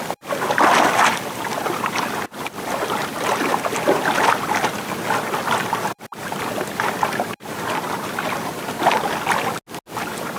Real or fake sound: real